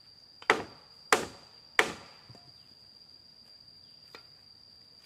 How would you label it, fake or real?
real